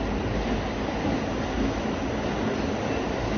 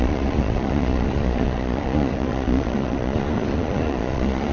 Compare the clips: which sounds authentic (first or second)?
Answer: first